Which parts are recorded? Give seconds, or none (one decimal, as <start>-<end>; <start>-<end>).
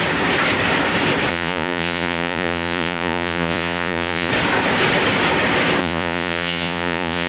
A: 0.0-1.3; 4.3-5.8